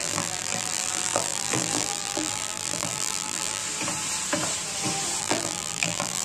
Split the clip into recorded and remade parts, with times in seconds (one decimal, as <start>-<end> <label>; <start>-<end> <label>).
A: 0.0-3.6 remade; 3.6-5.2 recorded; 5.2-6.2 remade